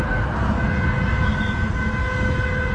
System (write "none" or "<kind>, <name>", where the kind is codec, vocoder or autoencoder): none